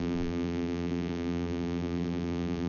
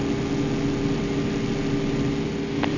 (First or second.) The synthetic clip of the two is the first